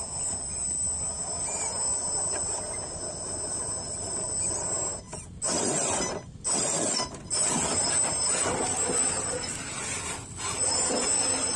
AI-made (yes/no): no